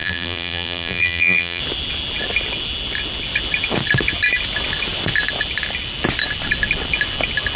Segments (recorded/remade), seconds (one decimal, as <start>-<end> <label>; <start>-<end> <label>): 0.0-1.6 remade; 1.6-7.6 recorded